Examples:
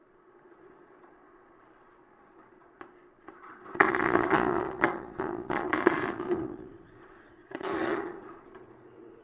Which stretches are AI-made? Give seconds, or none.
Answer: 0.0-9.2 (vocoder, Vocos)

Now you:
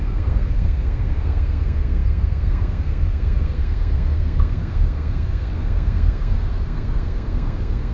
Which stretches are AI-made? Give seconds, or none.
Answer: 0.0-7.9 (codec, SNAC)